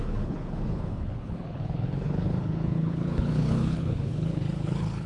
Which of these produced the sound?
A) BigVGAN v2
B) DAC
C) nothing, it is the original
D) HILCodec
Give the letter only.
D